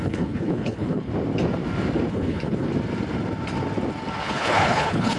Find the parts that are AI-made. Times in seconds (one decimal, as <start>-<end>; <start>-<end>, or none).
0.0-1.1; 2.1-2.7; 4.2-5.2